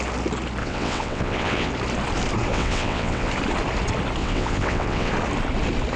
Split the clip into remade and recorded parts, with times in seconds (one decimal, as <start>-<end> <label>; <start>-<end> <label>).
0.0-0.6 recorded; 0.6-1.7 remade; 1.7-2.5 recorded; 2.5-3.3 remade; 3.3-4.2 recorded; 4.2-5.1 remade; 5.1-6.0 recorded